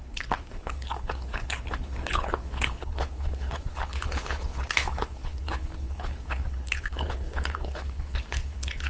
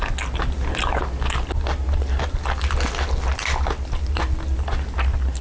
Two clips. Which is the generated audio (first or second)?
first